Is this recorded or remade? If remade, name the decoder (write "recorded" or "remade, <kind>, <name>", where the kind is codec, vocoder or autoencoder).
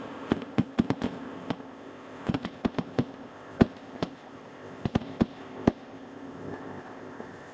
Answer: remade, codec, ZipCodec